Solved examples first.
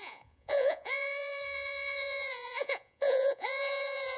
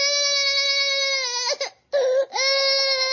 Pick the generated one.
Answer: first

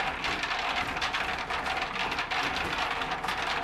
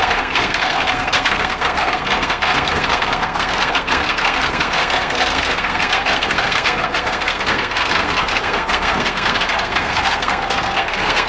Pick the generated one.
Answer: second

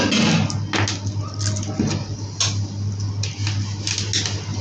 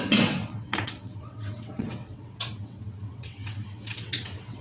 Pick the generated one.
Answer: second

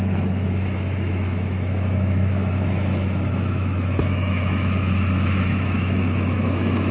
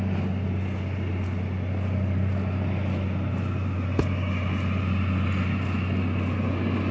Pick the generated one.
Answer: first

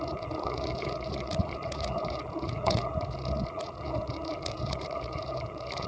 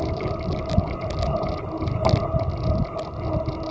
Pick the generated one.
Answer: first